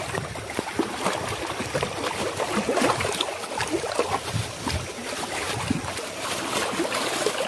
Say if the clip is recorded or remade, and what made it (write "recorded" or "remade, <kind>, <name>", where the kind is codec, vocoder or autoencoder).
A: recorded